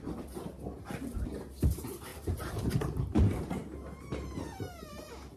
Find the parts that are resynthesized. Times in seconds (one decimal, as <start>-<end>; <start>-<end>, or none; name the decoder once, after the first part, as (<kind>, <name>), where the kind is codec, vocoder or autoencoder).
2.1-2.7 (vocoder, BigVGAN v2)